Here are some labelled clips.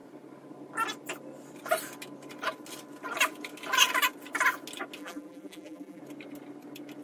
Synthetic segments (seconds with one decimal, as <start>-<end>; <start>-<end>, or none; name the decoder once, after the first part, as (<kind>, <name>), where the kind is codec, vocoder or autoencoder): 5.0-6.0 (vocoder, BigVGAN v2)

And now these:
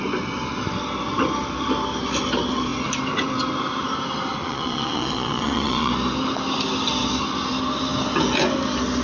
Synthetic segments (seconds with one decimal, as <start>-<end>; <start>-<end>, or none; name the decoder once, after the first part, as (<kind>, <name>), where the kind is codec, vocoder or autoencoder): 4.4-5.9 (vocoder, Vocos)

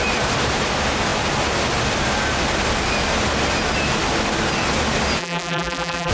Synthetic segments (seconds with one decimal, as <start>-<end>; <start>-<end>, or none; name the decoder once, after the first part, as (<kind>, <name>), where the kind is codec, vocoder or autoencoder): 5.2-6.1 (vocoder, BigVGAN v2)

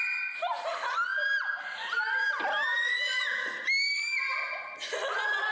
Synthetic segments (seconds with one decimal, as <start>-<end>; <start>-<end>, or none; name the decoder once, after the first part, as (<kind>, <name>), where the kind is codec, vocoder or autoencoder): none

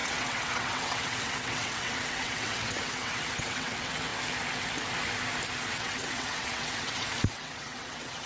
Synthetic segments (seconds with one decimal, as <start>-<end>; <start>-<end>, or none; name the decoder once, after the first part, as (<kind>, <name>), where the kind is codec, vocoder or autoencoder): 0.0-4.1 (vocoder, WaveNeXt); 5.7-8.3

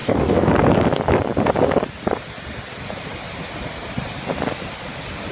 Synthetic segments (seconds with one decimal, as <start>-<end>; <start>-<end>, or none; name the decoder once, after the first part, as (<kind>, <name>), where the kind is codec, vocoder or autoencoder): 0.0-0.5 (codec, DAC)